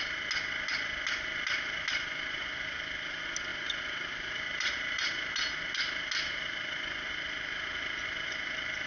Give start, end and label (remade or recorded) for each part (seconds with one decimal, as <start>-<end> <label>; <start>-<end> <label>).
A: 0.0-3.5 recorded; 3.5-5.3 remade; 5.3-8.9 recorded